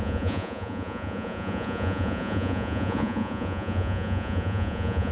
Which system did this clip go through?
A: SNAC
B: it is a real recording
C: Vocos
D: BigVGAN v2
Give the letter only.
C